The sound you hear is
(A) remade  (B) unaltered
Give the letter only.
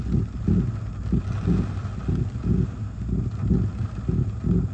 B